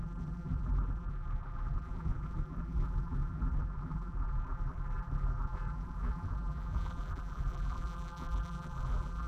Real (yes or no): no